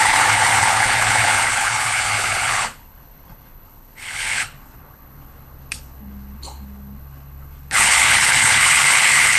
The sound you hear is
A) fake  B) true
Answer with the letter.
A